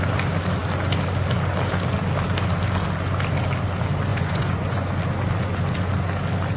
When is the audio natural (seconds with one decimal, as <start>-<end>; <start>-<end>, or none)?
0.0-4.1; 4.9-6.6